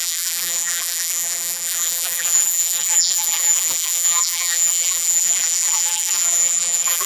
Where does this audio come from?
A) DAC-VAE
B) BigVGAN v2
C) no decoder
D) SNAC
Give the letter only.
B